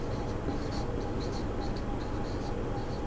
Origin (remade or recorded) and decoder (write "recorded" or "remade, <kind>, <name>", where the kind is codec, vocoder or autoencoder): recorded